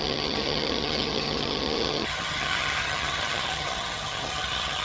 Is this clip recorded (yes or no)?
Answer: no